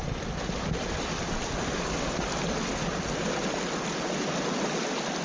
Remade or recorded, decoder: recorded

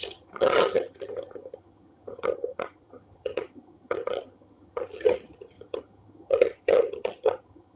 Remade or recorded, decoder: remade, vocoder, HiFi-GAN